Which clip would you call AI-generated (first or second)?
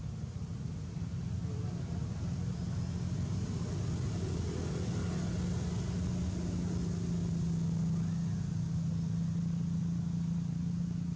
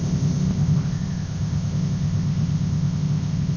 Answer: second